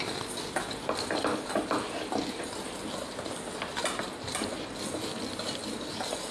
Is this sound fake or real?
real